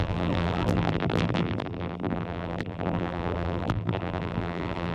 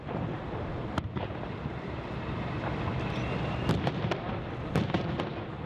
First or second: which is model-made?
first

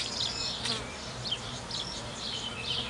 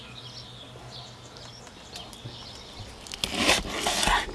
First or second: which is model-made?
first